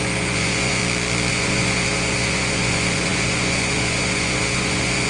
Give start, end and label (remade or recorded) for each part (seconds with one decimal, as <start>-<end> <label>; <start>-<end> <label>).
0.0-0.8 remade; 0.8-1.3 recorded; 1.3-5.1 remade